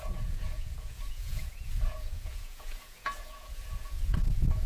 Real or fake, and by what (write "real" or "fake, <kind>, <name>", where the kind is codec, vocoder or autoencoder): fake, vocoder, Vocos